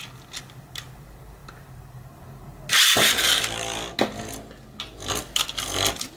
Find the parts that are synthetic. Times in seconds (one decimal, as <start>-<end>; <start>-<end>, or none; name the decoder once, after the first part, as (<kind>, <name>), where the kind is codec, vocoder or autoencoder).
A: none